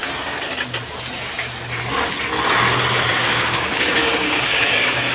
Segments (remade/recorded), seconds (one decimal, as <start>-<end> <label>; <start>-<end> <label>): 0.0-3.1 recorded; 3.1-5.1 remade